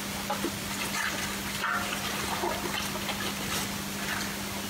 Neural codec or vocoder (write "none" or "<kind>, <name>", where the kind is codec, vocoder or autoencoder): none